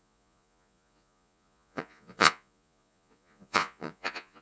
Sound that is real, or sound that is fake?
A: fake